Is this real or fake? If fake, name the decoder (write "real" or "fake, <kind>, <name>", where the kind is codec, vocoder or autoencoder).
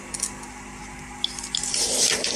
real